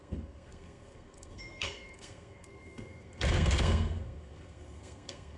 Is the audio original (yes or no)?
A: no